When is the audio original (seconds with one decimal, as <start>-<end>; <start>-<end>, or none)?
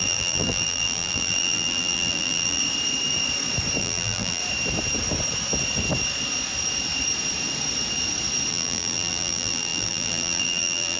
2.6-3.8; 4.4-8.5